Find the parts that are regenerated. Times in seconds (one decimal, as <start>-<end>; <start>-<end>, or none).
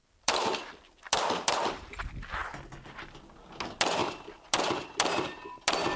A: 0.0-1.7; 4.0-4.7